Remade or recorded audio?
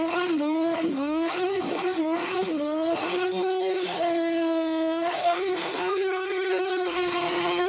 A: remade